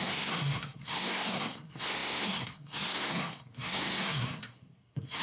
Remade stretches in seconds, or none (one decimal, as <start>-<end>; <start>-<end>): 0.0-5.2